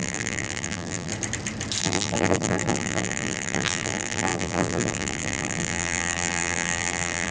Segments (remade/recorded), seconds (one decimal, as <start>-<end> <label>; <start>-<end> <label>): 0.0-1.1 remade; 1.1-1.8 recorded; 1.8-7.3 remade